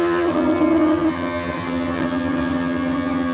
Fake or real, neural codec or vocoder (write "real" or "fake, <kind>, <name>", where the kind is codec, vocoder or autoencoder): fake, vocoder, HiFi-GAN